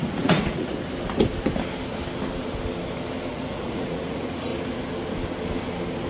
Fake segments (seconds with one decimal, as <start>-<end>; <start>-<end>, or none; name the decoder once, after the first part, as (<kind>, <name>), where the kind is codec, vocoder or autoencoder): 0.0-0.7 (vocoder, Vocos); 3.3-4.5